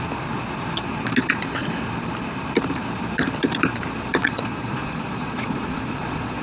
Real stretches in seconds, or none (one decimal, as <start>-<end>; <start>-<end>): 0.0-4.1